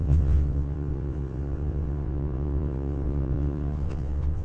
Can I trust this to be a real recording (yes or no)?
no